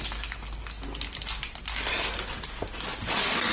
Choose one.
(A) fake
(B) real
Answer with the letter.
B